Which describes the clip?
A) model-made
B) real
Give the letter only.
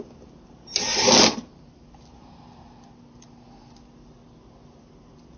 B